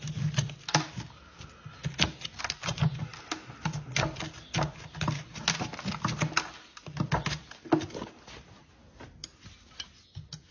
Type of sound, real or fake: real